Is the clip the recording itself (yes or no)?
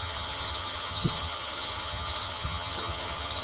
no